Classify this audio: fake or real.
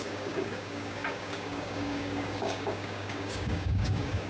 fake